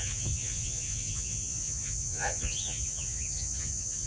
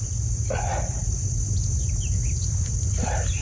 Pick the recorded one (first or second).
second